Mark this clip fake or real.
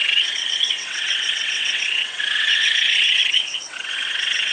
fake